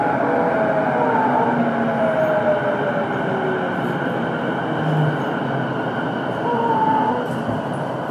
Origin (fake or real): real